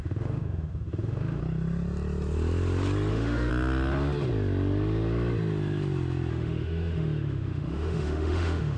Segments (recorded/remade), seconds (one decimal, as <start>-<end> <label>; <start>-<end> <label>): 0.0-1.4 remade; 1.4-3.1 recorded; 3.1-3.5 remade; 3.5-6.3 recorded; 6.3-8.8 remade